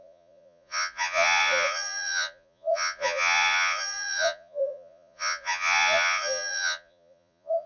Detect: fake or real fake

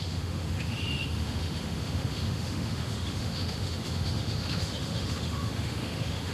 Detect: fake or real fake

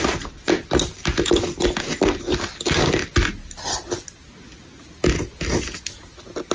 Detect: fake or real real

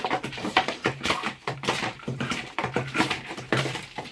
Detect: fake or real fake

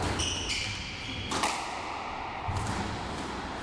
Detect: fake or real real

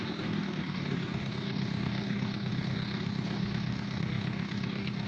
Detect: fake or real fake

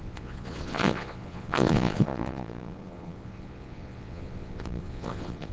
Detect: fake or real fake